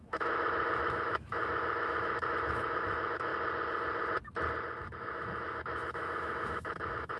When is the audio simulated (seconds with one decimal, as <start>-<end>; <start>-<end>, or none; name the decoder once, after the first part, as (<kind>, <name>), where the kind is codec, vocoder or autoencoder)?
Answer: 0.0-3.3 (autoencoder, DAC-VAE); 4.8-7.2